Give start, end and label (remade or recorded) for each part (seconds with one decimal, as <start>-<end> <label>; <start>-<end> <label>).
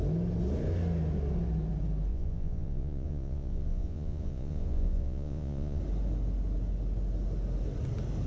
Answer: 0.0-2.1 recorded; 2.1-5.8 remade; 5.8-8.3 recorded